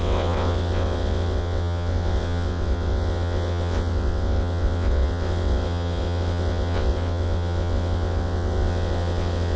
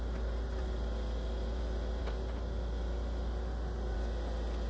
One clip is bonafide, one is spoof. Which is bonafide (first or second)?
second